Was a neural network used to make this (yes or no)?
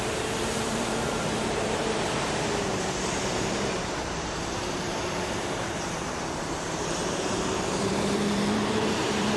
yes